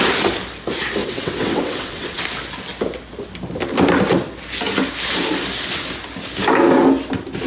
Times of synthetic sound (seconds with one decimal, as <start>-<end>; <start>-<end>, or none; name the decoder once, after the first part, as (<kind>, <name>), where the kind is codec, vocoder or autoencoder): 1.0-2.2 (vocoder, WaveNeXt)